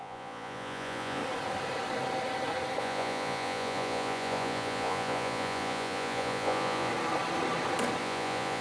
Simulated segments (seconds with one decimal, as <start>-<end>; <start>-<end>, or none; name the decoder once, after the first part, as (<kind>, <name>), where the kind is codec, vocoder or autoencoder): 0.0-1.2 (vocoder, Vocos); 2.8-6.9; 8.0-8.6